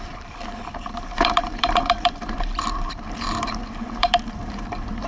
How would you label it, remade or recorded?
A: remade